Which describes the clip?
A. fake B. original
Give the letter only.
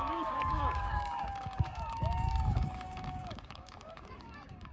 A